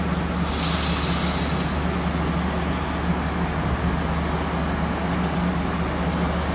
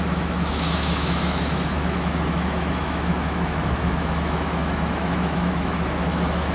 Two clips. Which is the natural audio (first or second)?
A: first